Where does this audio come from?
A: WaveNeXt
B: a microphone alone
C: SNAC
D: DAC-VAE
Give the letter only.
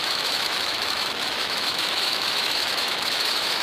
D